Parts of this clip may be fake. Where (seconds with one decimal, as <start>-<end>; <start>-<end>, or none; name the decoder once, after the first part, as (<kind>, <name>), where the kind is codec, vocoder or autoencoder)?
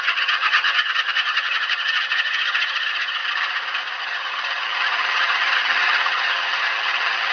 0.0-3.2 (vocoder, HiFi-GAN); 4.0-7.3